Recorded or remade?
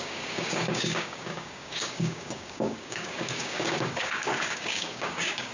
remade